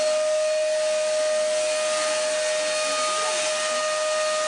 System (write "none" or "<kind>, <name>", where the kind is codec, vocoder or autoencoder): none